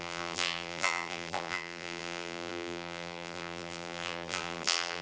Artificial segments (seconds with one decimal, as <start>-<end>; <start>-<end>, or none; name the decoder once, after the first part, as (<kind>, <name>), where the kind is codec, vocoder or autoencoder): 0.0-5.0 (vocoder, BigVGAN v2)